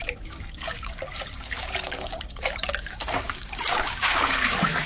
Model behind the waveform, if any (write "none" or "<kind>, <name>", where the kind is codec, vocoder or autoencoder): codec, DAC